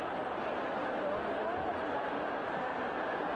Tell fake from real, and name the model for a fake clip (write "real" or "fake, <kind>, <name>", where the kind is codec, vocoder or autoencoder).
real